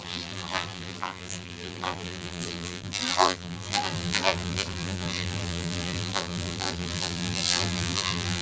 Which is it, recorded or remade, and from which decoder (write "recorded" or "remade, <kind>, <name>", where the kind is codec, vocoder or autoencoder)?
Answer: remade, vocoder, BigVGAN v2